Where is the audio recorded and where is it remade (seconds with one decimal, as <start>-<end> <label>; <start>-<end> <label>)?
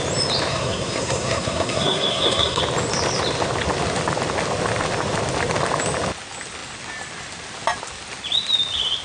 0.0-0.5 recorded; 0.5-2.6 remade; 2.6-9.0 recorded